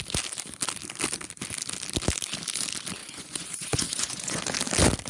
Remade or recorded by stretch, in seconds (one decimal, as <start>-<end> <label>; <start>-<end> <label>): 0.0-3.0 recorded; 3.0-4.4 remade; 4.4-5.1 recorded